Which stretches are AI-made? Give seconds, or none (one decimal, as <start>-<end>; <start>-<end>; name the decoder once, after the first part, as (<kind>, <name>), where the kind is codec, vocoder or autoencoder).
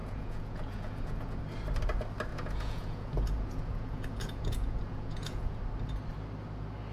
0.0-1.4 (vocoder, Vocos); 2.3-5.6